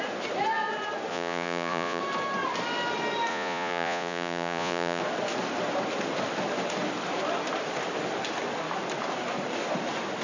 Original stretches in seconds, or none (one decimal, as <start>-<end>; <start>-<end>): 0.0-1.1; 2.0-3.3; 5.0-10.2